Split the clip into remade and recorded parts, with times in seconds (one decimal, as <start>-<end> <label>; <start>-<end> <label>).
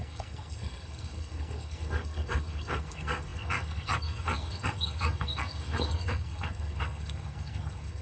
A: 0.0-8.0 remade